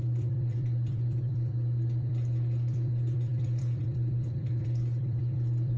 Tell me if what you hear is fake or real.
fake